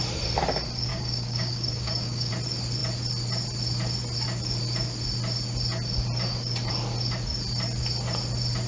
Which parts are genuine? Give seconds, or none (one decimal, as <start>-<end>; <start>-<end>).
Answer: 0.0-0.9; 2.3-8.7